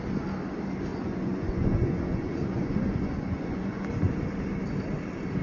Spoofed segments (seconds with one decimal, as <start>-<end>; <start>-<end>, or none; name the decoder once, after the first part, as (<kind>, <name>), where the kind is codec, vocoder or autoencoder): 0.9-4.1 (vocoder, Vocos)